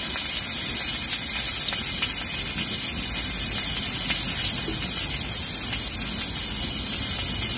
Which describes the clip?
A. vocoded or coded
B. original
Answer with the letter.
B